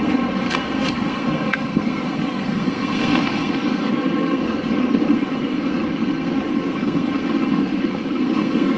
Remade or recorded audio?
remade